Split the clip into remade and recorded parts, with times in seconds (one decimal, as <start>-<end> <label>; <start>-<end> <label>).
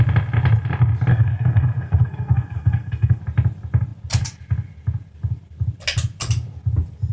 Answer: 0.0-1.1 recorded; 1.1-3.2 remade; 3.2-7.1 recorded